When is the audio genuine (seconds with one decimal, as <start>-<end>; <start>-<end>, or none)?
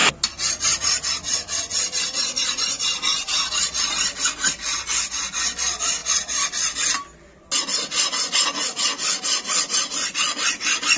0.0-11.0